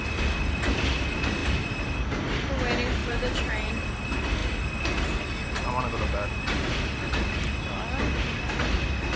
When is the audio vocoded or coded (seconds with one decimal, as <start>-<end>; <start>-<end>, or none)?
1.4-2.5; 3.0-3.7